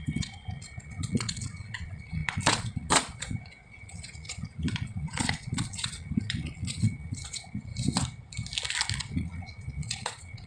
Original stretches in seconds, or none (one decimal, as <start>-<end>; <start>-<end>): 7.7-9.0

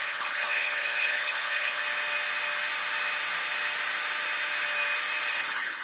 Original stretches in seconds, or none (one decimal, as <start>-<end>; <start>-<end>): 1.8-5.3

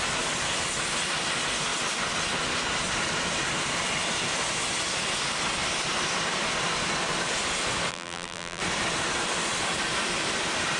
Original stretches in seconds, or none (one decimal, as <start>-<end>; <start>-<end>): 0.0-7.9; 8.6-10.8